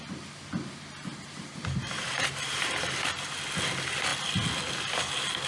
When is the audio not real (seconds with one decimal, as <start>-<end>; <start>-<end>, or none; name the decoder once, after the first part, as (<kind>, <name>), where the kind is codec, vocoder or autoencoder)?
1.8-2.9 (vocoder, BigVGAN v2)